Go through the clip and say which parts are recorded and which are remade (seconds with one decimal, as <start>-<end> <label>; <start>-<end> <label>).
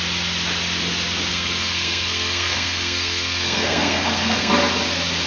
0.0-1.3 recorded; 1.3-4.5 remade; 4.5-5.3 recorded